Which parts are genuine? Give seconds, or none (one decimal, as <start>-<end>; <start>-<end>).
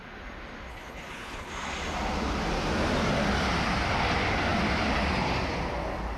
0.0-0.7; 1.5-6.2